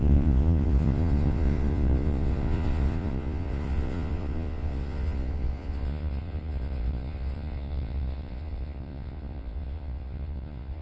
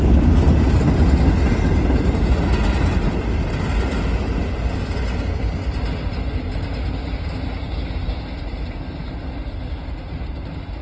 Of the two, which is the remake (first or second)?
first